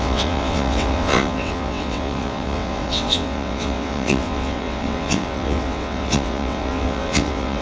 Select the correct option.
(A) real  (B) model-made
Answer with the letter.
B